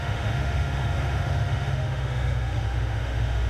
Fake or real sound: fake